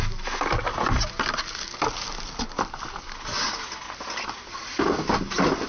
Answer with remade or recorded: recorded